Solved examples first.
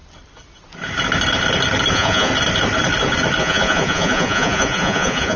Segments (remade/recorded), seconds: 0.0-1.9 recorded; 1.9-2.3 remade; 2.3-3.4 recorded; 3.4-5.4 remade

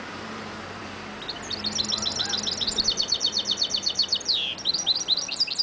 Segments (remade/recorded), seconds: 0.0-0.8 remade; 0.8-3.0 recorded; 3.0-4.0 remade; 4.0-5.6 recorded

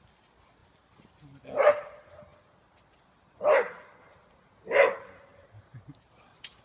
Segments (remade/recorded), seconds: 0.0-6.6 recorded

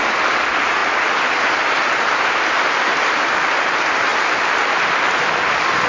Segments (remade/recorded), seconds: 0.0-5.9 recorded

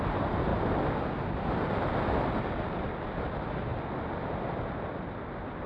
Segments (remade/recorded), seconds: 0.0-5.7 recorded

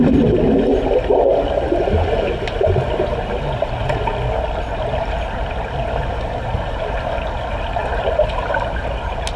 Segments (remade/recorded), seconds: 0.0-9.4 recorded